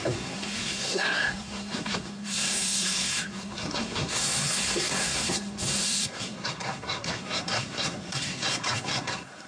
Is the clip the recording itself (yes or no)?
no